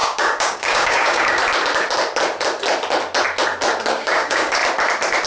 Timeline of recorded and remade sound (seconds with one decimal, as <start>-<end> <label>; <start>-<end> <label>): 0.0-1.4 remade; 1.4-3.9 recorded; 3.9-4.6 remade; 4.6-5.3 recorded